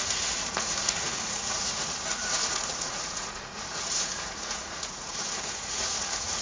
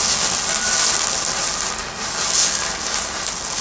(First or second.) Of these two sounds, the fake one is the first